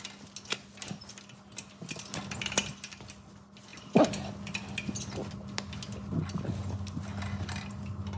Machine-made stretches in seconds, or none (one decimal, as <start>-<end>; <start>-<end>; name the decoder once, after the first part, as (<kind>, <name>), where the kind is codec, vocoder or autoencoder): none